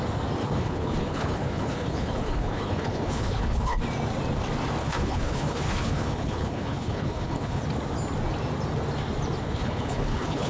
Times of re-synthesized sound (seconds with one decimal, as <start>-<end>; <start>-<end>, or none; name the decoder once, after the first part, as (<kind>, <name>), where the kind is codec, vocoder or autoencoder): 0.4-3.8 (codec, HILCodec); 4.8-7.6; 9.4-10.5